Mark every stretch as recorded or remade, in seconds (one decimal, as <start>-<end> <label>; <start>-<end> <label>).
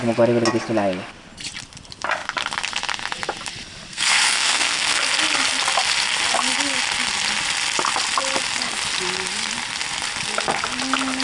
0.0-3.9 recorded; 3.9-5.0 remade; 5.0-11.2 recorded